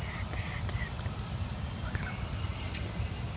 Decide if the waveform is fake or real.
real